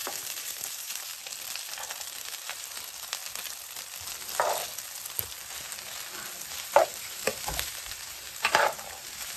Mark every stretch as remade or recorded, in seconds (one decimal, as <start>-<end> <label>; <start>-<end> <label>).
0.0-1.1 remade; 1.1-2.5 recorded; 2.5-3.2 remade; 3.2-6.5 recorded; 6.5-9.4 remade